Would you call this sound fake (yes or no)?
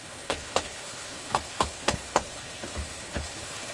yes